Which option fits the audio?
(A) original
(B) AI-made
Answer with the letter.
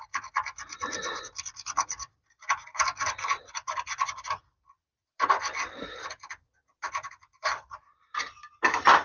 A